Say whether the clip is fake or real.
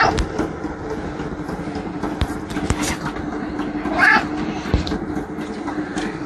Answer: real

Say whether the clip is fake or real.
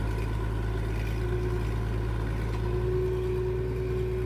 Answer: real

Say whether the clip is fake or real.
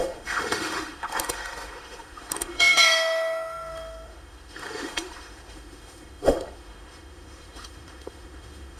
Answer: fake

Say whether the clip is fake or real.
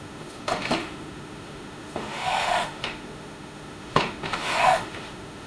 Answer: fake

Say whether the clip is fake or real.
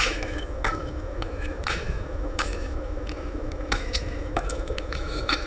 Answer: fake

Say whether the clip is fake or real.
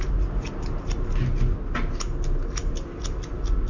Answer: real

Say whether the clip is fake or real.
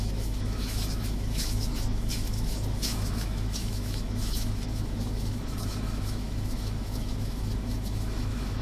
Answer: fake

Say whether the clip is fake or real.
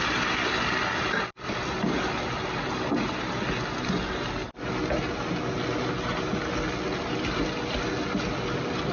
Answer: real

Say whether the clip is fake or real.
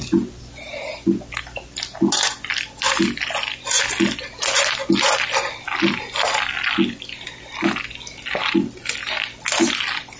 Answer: real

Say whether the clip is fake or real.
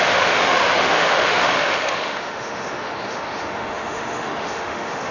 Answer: fake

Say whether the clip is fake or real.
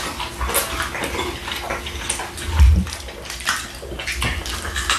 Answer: real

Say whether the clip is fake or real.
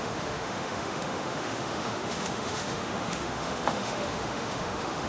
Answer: fake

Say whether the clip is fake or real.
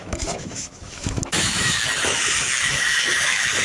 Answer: fake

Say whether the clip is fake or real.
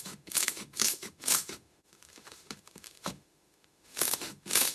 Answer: fake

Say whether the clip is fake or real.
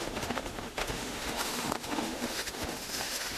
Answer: fake